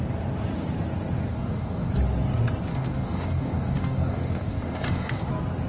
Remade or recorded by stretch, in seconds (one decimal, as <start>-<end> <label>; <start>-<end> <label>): 0.0-1.3 recorded; 1.3-1.9 remade; 1.9-2.7 recorded; 2.7-5.3 remade; 5.3-5.7 recorded